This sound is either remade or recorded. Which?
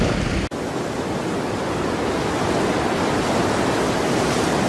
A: recorded